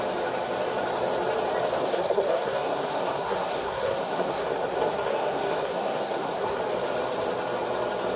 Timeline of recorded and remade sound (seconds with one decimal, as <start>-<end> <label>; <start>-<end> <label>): 0.0-1.8 recorded; 1.8-6.6 remade; 6.6-8.2 recorded